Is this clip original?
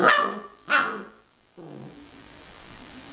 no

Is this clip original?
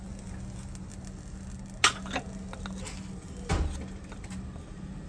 yes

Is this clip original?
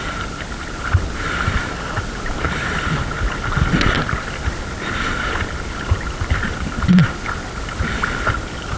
yes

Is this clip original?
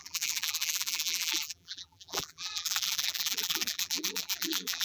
no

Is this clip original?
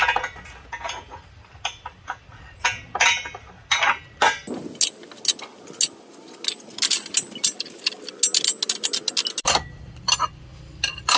yes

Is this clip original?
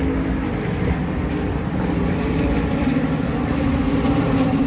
no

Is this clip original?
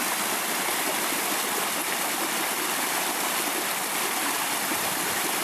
no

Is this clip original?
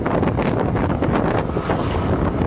yes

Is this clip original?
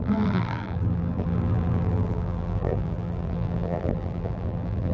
no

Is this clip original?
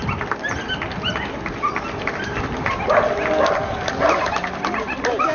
yes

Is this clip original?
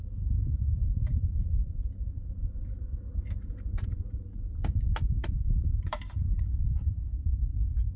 no